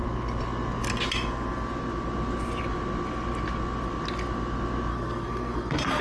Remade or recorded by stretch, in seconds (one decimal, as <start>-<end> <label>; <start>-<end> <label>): 0.0-4.9 recorded; 4.9-6.0 remade